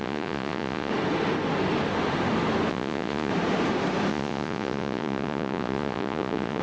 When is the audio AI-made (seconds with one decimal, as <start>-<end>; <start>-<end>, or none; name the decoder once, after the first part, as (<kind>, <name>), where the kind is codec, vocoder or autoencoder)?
0.0-0.9 (vocoder, Vocos); 2.7-3.3; 4.1-6.6